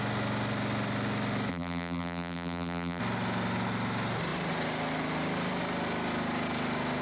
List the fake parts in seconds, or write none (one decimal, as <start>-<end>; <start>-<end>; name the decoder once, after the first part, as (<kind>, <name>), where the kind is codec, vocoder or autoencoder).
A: 1.5-3.0 (vocoder, BigVGAN v2)